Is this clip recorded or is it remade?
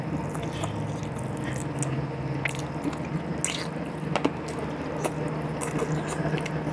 recorded